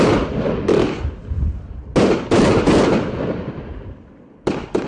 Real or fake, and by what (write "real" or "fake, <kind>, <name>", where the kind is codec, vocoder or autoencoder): real